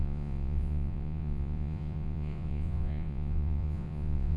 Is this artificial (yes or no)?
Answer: yes